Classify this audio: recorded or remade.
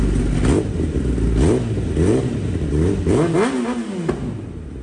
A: recorded